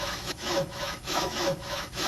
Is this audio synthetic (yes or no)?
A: yes